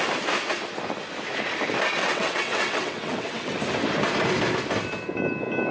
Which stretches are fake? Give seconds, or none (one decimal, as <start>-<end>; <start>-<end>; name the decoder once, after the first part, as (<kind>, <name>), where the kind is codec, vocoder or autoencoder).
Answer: 2.0-3.6 (vocoder, WaveNeXt)